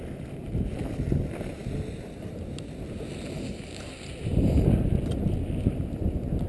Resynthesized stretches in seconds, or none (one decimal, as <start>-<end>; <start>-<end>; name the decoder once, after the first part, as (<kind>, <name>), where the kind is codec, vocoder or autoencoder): none